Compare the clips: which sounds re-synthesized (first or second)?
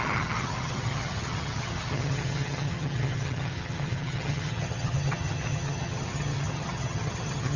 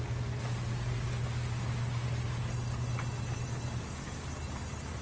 first